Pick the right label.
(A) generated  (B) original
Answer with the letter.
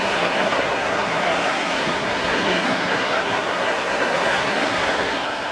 A